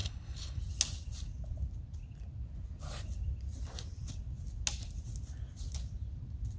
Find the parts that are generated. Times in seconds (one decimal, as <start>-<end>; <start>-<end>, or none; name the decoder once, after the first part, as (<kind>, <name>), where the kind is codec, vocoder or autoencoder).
0.0-0.6 (codec, HILCodec)